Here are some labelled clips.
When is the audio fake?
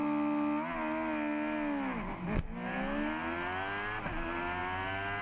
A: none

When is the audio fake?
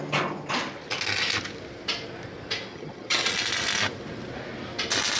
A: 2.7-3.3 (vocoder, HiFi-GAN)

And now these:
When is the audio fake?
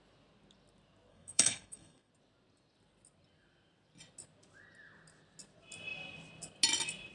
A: 1.1-2.1 (codec, SNAC)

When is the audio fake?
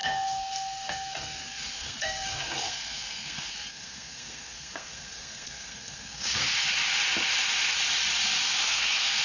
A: 0.0-6.4 (codec, SNAC); 8.6-9.2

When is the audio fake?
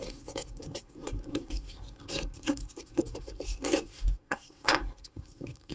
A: 0.0-5.7 (codec, SNAC)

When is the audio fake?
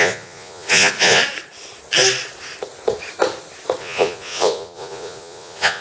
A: 0.0-1.2 (vocoder, Vocos); 3.8-5.8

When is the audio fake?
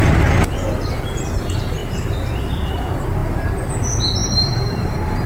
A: 4.2-5.3 (vocoder, BigVGAN v2)